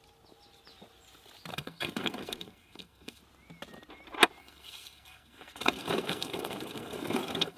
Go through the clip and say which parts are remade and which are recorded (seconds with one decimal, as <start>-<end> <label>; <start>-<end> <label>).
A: 0.0-1.5 recorded; 1.5-3.2 remade; 3.2-4.4 recorded; 4.4-7.6 remade